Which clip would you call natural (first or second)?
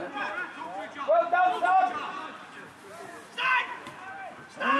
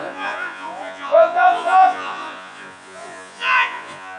first